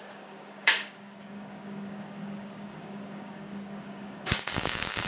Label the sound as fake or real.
fake